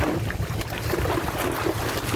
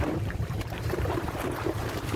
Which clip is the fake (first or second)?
second